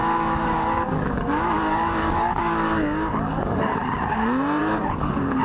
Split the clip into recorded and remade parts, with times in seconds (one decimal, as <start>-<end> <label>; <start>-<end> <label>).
0.0-3.8 remade; 3.8-4.6 recorded; 4.6-5.4 remade

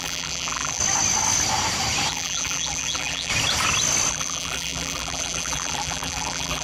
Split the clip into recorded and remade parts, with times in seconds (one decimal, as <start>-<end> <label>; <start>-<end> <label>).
0.0-0.8 remade; 0.8-2.1 recorded; 2.1-3.3 remade; 3.3-4.1 recorded; 4.1-6.6 remade

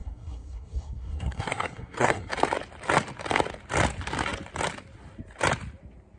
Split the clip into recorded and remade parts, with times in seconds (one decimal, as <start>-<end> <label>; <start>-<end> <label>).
0.0-2.3 remade; 2.3-6.2 recorded

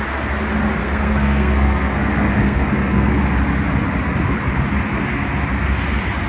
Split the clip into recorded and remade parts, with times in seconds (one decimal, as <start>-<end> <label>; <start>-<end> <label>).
0.0-0.8 recorded; 0.8-3.2 remade; 3.2-6.3 recorded

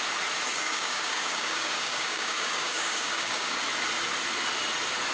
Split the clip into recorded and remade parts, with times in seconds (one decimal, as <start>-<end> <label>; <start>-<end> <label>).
0.0-0.5 recorded; 0.5-3.6 remade; 3.6-5.1 recorded

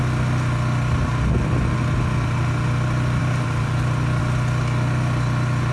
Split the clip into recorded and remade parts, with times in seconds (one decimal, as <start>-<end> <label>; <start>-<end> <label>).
0.0-3.2 recorded; 3.2-4.2 remade; 4.2-5.7 recorded